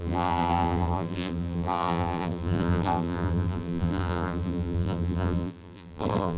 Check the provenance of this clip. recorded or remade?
remade